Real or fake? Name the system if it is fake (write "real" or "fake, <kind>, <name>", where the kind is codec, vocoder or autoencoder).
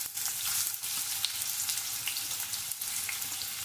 real